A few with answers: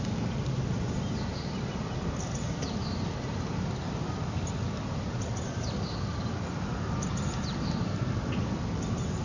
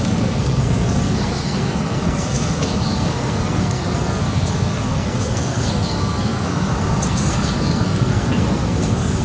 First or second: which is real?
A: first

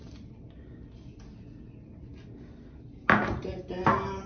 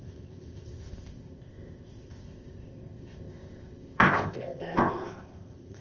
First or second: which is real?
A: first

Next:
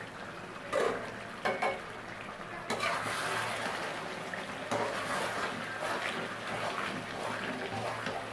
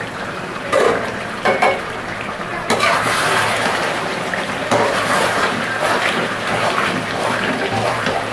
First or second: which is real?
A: first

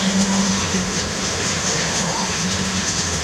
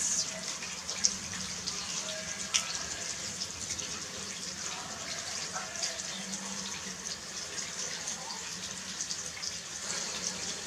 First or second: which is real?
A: second